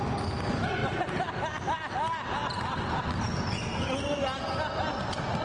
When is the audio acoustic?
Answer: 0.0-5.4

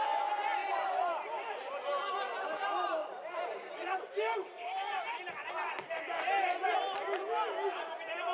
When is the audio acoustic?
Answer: 0.0-3.0; 5.5-8.3